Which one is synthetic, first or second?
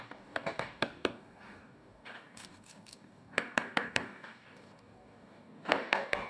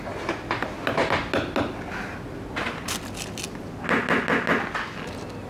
first